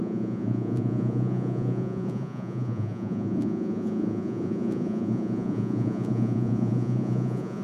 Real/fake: fake